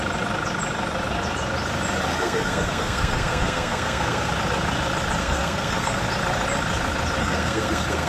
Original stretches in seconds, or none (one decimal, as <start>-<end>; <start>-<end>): 0.0-2.1; 4.3-5.2; 6.0-7.2